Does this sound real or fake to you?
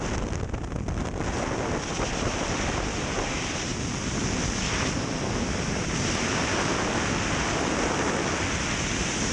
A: real